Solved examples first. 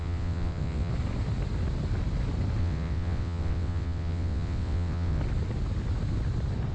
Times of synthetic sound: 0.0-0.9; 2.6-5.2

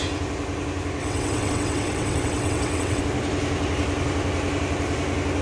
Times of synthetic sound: 1.0-3.0

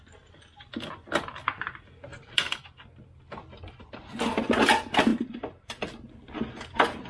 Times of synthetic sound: 5.1-5.8

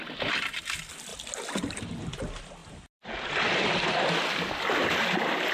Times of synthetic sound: none

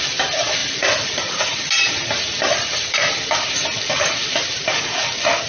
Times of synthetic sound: none

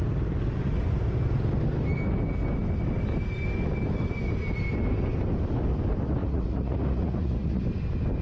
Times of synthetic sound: 6.2-7.6

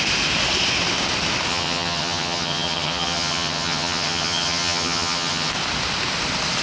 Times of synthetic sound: 1.5-5.5

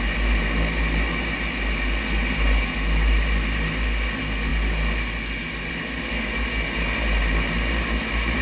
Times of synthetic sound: none